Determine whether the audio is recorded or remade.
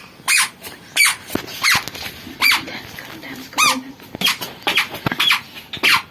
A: recorded